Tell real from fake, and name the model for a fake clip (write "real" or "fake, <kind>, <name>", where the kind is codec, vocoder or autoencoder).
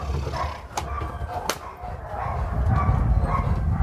real